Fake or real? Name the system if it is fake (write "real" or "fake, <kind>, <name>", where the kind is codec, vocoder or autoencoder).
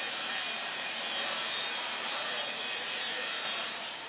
fake, vocoder, BigVGAN v2